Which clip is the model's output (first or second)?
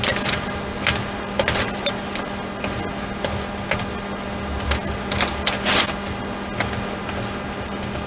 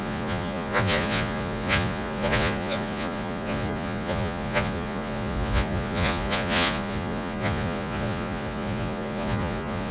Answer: second